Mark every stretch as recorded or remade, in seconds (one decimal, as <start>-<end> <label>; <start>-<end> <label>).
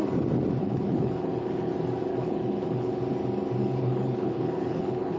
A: 0.0-0.6 recorded; 0.6-1.7 remade; 1.7-2.1 recorded; 2.1-3.0 remade; 3.0-3.6 recorded; 3.6-5.2 remade